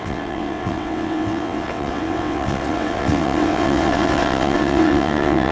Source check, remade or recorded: remade